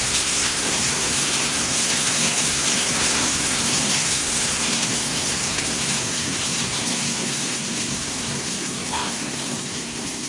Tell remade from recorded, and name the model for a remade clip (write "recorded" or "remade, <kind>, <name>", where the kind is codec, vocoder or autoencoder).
remade, codec, SNAC